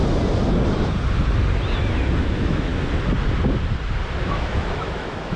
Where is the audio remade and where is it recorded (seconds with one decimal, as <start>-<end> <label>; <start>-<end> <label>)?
0.0-2.2 recorded; 2.2-2.7 remade; 2.7-4.2 recorded; 4.2-5.4 remade